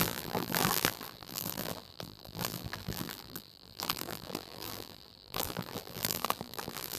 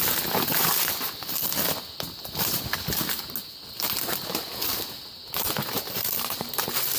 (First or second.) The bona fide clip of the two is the second